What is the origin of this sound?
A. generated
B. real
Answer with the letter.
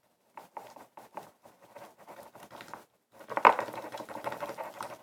B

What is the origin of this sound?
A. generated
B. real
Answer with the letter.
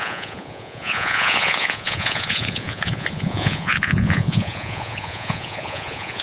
A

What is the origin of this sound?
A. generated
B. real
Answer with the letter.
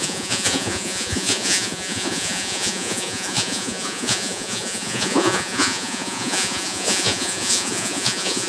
A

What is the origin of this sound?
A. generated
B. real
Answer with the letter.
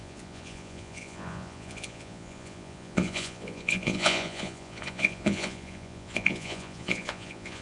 A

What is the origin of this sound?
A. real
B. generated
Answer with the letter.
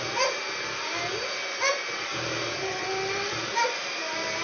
A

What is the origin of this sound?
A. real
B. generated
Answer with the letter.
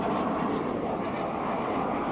A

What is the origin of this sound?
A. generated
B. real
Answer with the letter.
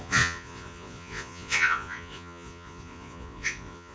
A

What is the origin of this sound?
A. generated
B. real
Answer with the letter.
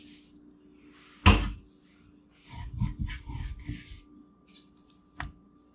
B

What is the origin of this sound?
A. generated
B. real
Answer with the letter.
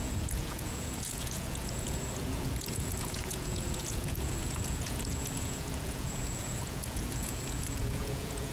A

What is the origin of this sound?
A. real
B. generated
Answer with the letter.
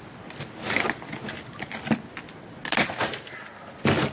A